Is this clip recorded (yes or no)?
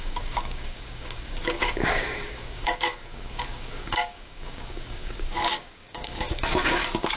no